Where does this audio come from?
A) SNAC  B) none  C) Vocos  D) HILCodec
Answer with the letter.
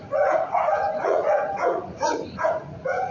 C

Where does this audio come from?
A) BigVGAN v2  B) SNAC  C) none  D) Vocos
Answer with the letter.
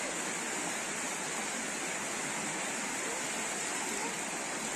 C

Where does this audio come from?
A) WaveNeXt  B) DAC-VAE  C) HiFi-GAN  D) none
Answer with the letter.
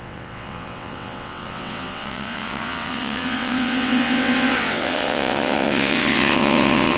A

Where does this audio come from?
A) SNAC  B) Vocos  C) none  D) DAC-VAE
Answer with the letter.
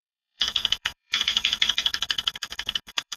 A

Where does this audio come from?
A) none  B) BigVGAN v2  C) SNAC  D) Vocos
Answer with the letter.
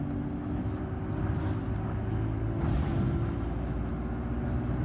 A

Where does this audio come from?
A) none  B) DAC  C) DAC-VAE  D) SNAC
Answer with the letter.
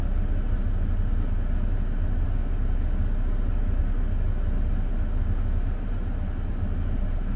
A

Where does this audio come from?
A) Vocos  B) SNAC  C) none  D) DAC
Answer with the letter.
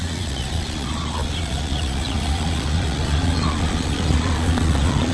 A